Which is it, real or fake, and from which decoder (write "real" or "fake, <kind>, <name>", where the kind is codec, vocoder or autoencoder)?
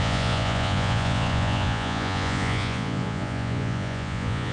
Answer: fake, vocoder, Vocos